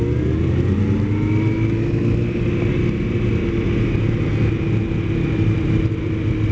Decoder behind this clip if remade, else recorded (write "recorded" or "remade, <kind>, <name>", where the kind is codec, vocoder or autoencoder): recorded